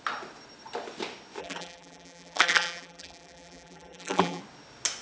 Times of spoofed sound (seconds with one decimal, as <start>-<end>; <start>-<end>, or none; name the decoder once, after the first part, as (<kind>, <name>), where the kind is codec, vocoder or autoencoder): 1.4-4.4 (vocoder, BigVGAN v2)